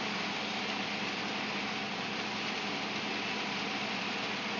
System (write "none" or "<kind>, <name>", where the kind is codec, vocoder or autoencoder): none